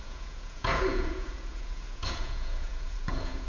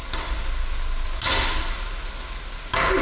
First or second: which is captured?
second